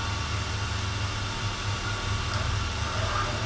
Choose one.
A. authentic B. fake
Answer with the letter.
A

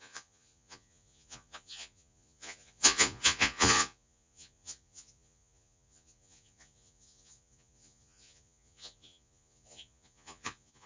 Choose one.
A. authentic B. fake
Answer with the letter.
B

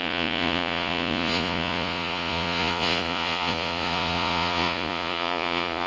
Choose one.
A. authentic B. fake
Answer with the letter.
B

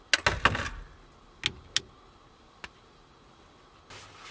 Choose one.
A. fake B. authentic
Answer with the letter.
B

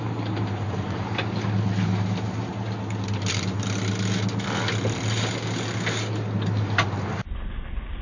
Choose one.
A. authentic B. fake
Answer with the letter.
A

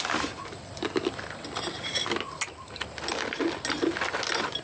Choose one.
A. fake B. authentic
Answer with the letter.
B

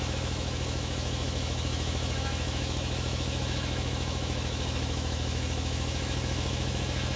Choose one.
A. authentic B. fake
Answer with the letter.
B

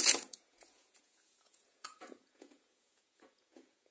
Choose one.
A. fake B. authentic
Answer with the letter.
A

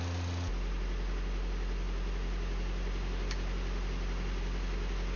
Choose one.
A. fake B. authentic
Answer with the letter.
B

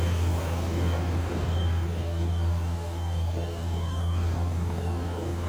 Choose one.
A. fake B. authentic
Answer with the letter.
A